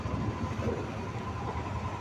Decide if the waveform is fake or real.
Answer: real